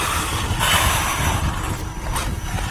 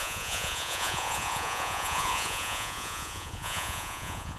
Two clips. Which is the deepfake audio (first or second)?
second